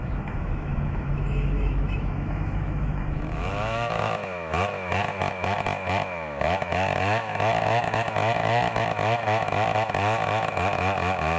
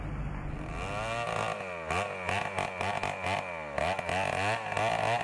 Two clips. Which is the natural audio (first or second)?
second